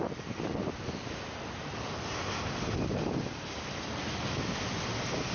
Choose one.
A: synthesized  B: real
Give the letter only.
B